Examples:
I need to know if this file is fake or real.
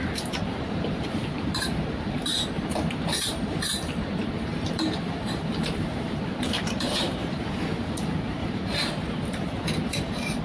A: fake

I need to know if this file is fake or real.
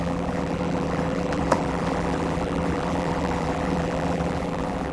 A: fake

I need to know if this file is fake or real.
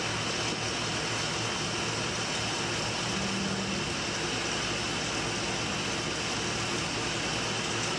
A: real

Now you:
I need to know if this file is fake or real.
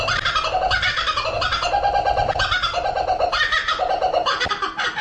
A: real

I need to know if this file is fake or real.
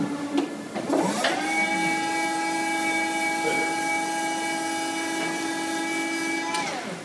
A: real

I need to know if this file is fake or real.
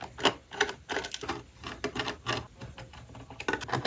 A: real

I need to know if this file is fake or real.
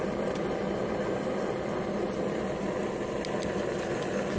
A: real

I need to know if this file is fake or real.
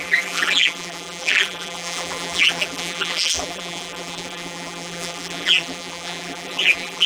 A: fake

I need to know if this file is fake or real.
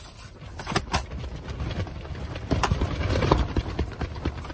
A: fake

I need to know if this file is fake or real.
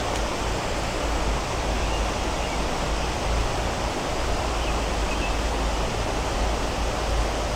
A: real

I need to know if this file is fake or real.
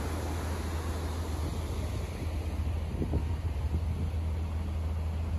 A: real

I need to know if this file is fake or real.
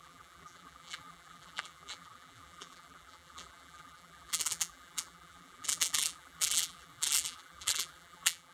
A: fake